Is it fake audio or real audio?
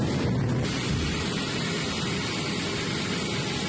real